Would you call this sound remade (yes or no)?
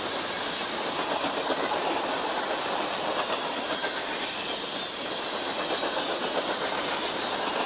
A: no